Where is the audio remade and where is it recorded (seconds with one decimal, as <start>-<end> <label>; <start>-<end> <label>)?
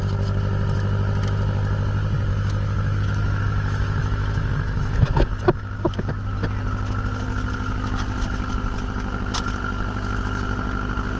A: 0.0-2.3 recorded; 2.3-6.1 remade; 6.1-11.2 recorded